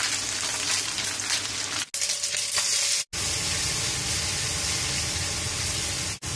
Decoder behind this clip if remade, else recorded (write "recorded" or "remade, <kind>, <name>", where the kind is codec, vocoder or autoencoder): recorded